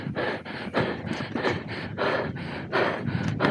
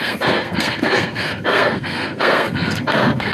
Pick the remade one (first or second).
second